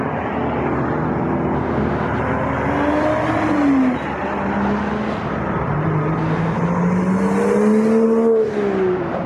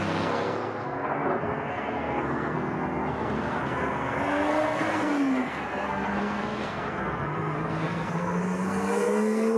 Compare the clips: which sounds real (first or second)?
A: first